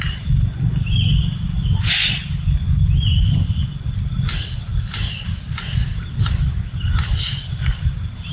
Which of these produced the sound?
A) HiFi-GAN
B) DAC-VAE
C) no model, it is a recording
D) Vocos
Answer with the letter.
C